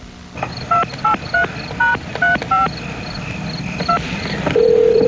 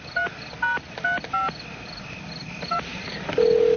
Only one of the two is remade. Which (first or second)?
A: first